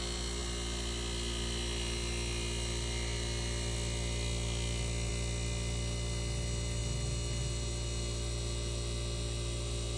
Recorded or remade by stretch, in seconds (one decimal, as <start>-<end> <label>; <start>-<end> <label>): 0.0-10.0 recorded